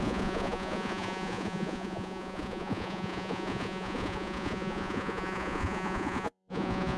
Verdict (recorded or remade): remade